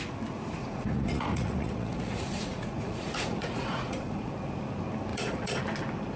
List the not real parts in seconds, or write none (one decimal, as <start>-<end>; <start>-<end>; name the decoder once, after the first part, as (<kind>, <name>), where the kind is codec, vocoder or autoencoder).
0.6-4.3 (vocoder, Vocos); 5.1-5.6